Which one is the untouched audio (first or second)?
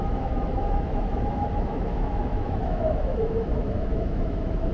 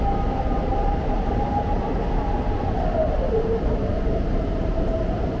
second